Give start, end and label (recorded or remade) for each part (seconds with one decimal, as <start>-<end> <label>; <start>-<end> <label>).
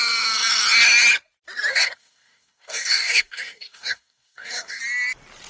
0.0-1.7 recorded; 1.7-4.8 remade; 4.8-5.5 recorded